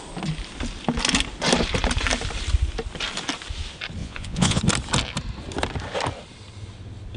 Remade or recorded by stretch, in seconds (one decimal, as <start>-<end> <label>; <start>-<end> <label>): 0.0-4.0 recorded; 4.0-4.6 remade; 4.6-7.2 recorded